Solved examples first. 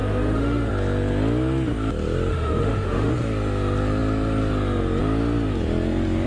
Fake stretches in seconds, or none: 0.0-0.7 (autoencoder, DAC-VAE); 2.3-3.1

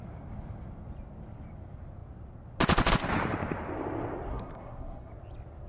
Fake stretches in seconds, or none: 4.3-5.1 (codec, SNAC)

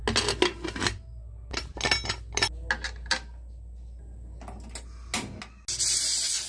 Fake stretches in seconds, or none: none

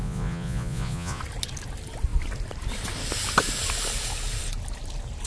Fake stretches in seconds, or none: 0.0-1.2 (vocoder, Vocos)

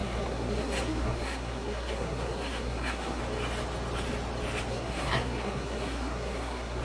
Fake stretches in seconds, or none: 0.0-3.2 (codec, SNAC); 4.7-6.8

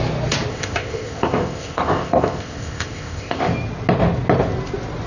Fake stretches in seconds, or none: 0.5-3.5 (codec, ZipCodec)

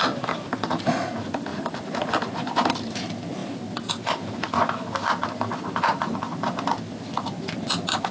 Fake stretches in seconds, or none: 1.5-2.2 (vocoder, BigVGAN v2)

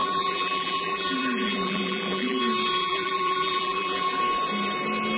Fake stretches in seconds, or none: 0.0-2.4 (vocoder, BigVGAN v2); 2.8-4.2